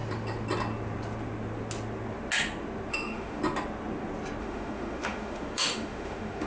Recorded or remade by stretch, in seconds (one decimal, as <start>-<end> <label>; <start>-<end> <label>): 0.0-2.9 recorded; 2.9-3.4 remade; 3.4-4.4 recorded; 4.4-6.5 remade